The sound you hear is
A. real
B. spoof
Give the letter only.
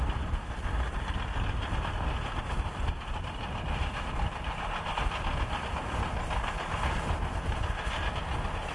A